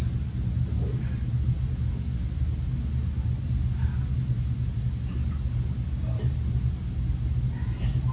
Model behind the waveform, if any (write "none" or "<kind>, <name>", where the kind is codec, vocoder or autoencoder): none